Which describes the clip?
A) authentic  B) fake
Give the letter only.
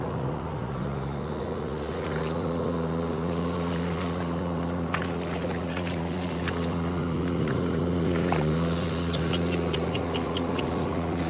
B